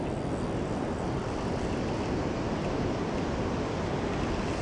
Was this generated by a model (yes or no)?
no